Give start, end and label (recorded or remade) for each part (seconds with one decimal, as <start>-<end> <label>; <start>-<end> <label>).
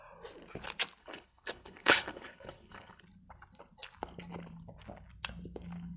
0.0-1.0 recorded; 1.0-3.0 remade; 3.0-6.0 recorded